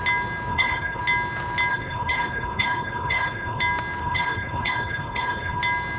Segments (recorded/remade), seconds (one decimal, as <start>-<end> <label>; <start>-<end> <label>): 0.0-0.5 recorded; 0.5-1.0 remade; 1.0-1.7 recorded; 1.7-3.6 remade; 3.6-4.0 recorded; 4.0-5.6 remade; 5.6-6.0 recorded